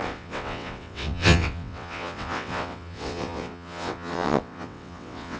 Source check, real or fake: fake